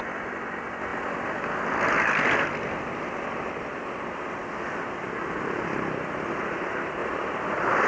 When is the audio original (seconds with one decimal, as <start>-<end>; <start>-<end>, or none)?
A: 4.4-6.3